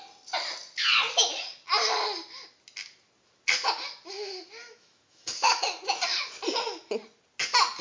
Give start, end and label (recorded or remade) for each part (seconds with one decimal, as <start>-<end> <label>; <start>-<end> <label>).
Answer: 0.0-4.6 recorded; 4.6-5.8 remade; 5.8-7.8 recorded